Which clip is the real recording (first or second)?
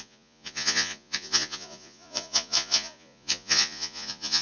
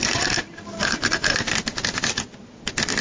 second